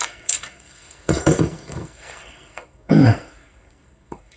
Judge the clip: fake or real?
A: fake